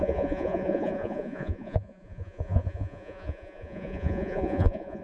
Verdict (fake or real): fake